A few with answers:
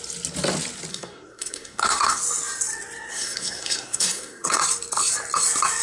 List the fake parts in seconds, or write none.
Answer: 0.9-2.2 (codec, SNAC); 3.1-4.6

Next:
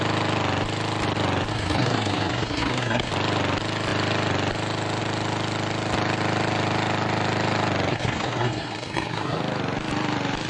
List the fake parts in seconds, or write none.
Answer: 1.5-3.1 (codec, SNAC); 7.9-9.4